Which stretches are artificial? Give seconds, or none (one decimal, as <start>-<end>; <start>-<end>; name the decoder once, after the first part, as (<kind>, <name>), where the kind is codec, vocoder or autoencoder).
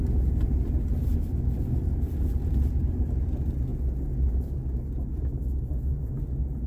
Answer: none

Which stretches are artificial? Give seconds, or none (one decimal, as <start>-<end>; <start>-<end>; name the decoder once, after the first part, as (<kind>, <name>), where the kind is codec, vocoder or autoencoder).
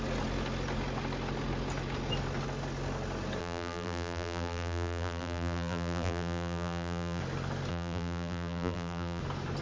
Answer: 3.4-7.2 (vocoder, BigVGAN v2); 7.7-9.2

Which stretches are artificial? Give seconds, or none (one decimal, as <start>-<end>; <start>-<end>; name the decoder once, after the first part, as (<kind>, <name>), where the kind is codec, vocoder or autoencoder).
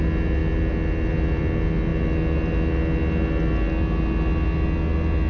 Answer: none